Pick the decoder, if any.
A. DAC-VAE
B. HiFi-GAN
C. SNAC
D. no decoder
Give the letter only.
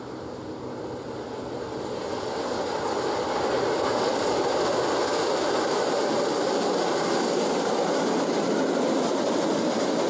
D